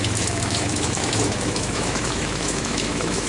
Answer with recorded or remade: remade